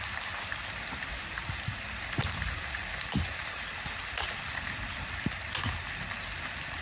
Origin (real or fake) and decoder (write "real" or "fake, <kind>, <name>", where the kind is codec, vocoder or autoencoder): real